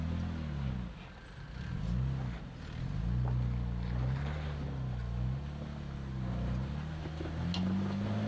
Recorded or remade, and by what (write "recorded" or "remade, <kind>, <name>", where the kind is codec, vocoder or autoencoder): recorded